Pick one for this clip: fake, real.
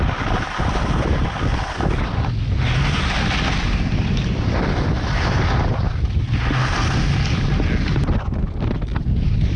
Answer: real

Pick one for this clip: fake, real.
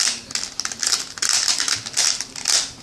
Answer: real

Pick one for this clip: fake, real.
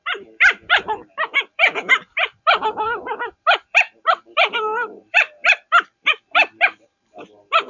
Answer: fake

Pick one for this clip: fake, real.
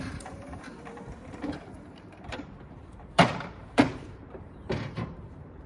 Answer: fake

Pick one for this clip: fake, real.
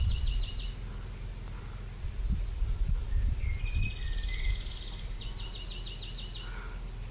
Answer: real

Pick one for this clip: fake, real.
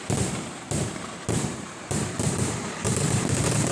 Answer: fake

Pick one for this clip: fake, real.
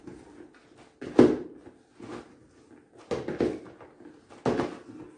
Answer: real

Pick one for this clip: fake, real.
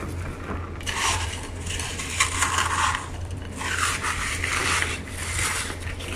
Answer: fake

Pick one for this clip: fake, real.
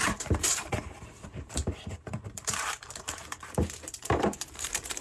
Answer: fake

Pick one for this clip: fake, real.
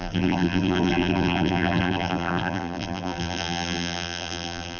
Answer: fake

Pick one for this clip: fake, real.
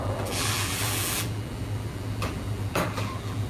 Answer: fake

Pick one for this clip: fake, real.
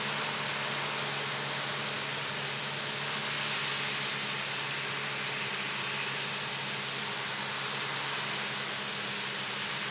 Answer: real